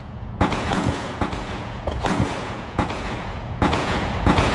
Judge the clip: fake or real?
fake